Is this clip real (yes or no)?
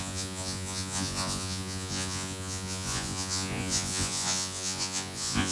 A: no